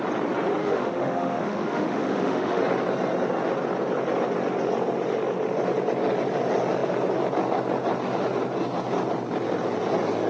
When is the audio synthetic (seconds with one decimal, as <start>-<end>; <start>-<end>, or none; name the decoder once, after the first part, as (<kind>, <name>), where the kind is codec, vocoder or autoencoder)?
0.6-2.6 (autoencoder, DAC-VAE)